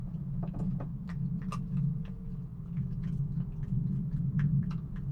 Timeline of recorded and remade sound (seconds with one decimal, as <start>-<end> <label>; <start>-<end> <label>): 0.0-0.9 remade; 0.9-1.6 recorded; 1.6-5.1 remade